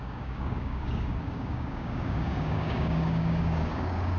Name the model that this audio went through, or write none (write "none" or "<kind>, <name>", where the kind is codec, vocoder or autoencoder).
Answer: codec, DAC